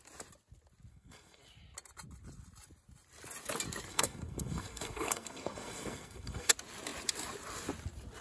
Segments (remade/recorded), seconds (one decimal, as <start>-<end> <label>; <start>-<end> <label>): 0.0-0.9 recorded; 0.9-1.4 remade; 1.4-3.9 recorded; 3.9-6.5 remade; 6.5-8.2 recorded